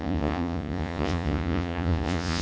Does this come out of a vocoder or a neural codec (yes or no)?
yes